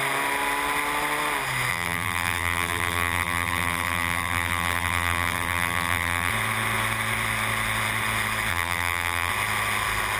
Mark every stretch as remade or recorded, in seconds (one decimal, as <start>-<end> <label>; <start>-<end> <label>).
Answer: 0.0-1.7 recorded; 1.7-6.3 remade; 6.3-8.5 recorded; 8.5-9.3 remade; 9.3-10.2 recorded